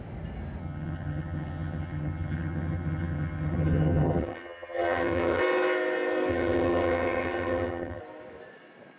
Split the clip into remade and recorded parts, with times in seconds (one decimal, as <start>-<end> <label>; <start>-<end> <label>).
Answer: 0.0-0.6 recorded; 0.6-5.4 remade; 5.4-6.3 recorded; 6.3-8.0 remade; 8.0-9.0 recorded

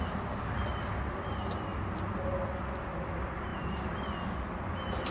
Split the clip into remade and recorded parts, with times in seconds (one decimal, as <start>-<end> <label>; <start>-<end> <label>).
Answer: 0.0-5.1 recorded